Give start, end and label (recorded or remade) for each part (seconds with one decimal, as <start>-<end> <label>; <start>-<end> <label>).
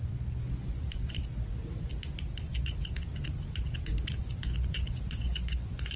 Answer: 0.0-1.2 remade; 1.2-4.2 recorded; 4.2-6.0 remade